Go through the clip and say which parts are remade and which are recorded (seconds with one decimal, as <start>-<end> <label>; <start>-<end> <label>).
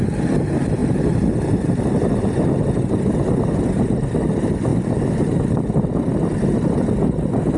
0.0-7.6 recorded